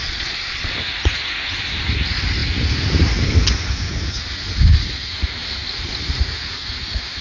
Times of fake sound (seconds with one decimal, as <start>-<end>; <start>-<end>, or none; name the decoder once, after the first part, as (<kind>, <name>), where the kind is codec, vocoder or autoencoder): 0.0-0.7 (vocoder, Vocos)